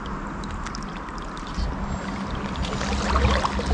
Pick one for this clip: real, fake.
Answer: real